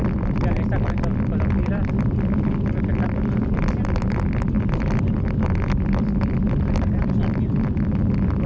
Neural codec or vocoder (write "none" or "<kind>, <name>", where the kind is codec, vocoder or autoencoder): vocoder, BigVGAN v2